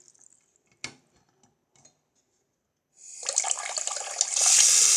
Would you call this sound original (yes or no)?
yes